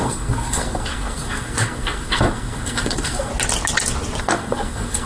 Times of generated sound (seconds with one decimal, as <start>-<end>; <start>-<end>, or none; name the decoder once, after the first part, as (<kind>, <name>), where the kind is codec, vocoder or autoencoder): 0.0-3.3 (codec, SNAC); 4.2-5.1